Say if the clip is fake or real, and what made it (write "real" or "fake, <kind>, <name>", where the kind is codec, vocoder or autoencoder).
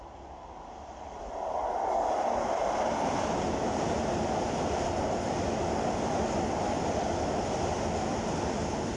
real